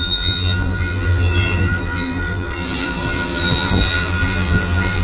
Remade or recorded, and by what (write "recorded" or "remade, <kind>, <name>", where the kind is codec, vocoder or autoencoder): remade, vocoder, BigVGAN v2